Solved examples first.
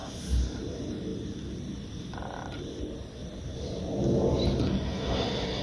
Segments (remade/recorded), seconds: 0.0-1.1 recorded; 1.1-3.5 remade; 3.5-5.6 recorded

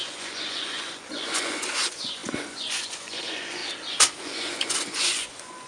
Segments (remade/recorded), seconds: 0.0-3.6 remade; 3.6-4.2 recorded; 4.2-5.7 remade